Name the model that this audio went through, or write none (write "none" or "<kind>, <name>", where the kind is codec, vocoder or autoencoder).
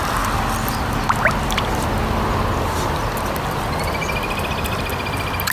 none